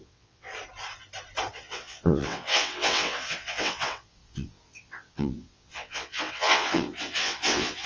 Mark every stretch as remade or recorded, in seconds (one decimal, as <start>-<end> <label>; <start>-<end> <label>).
0.0-0.5 remade; 0.5-1.5 recorded; 1.5-7.9 remade